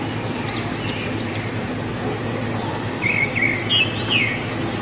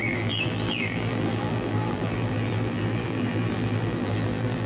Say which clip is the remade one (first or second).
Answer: second